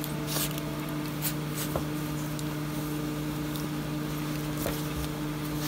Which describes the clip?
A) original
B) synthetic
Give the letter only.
A